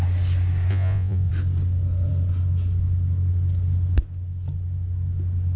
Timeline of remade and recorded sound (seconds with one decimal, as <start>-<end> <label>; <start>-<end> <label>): 0.0-0.7 recorded; 0.7-1.3 remade; 1.3-5.6 recorded